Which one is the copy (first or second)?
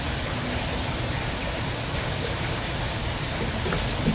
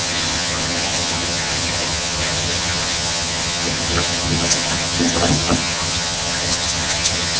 second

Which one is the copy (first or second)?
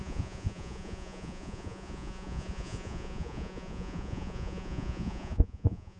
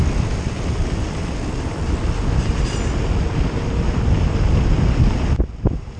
first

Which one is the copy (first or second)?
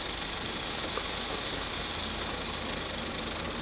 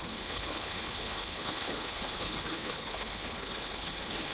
second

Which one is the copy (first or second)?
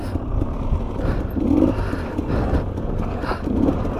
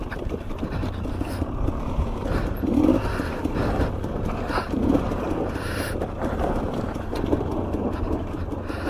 second